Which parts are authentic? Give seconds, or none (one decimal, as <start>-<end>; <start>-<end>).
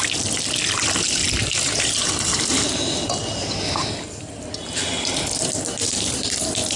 0.0-1.2; 5.3-6.8